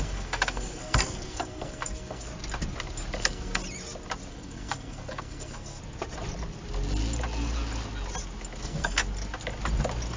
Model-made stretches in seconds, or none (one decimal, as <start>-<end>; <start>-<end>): 0.0-2.3; 3.2-3.6; 4.3-5.8; 8.6-9.0